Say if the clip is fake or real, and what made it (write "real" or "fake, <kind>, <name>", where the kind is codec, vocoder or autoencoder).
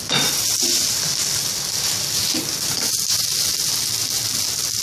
real